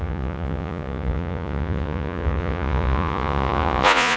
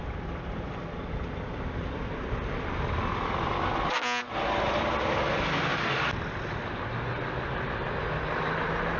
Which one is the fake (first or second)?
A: first